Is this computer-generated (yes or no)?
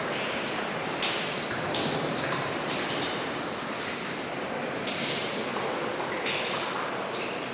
yes